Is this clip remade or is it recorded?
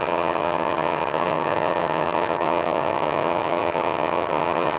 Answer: remade